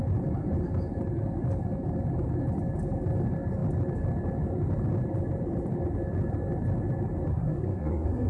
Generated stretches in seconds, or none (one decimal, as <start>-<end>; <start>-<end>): 7.3-8.3